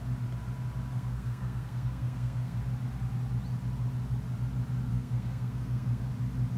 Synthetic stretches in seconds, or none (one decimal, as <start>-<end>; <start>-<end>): 0.9-2.6; 4.9-6.1